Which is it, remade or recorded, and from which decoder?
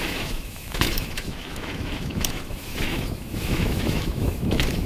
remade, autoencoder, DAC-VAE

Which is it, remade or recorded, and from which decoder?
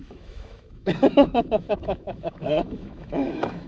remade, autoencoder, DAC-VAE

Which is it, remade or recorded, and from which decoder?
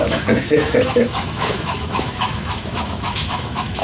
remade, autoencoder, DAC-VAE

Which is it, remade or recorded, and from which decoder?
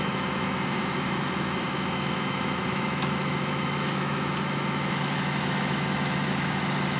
remade, autoencoder, DAC-VAE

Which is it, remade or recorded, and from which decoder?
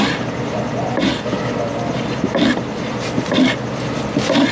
recorded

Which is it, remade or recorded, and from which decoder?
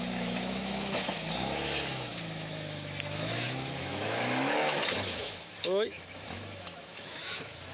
remade, autoencoder, DAC-VAE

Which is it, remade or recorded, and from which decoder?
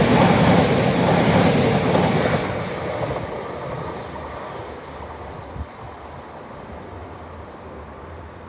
recorded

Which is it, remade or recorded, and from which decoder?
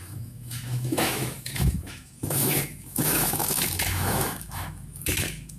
remade, autoencoder, DAC-VAE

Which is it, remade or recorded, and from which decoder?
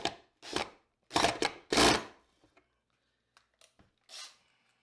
recorded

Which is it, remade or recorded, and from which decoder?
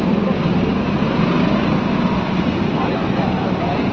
recorded